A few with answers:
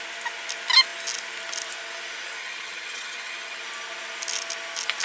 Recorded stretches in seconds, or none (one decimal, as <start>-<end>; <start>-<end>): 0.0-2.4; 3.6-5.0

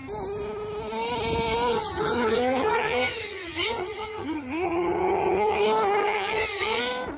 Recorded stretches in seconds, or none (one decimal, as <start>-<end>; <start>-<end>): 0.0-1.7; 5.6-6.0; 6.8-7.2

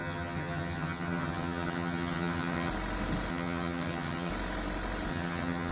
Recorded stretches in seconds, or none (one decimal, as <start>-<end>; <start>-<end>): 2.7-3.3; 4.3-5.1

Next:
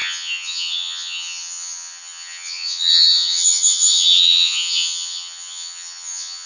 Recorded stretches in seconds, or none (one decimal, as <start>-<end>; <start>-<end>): none

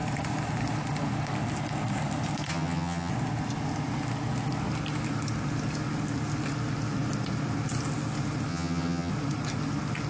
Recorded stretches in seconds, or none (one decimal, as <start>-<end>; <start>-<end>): 0.0-2.5; 3.1-8.5; 9.1-10.1

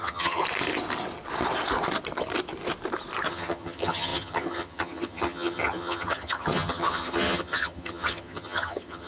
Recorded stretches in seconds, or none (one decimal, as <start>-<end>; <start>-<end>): 0.4-3.3

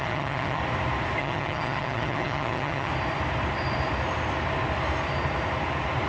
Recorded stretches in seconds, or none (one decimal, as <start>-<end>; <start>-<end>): 0.6-1.2; 2.9-6.1